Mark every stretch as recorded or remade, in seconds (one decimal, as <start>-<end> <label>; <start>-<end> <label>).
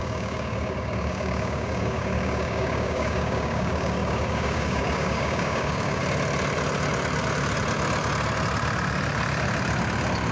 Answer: 0.0-6.0 remade; 6.0-10.3 recorded